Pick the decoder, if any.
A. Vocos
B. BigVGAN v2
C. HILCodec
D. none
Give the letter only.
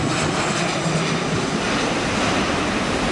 D